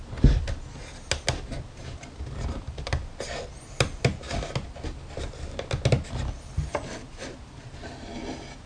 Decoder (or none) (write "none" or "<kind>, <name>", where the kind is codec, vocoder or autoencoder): none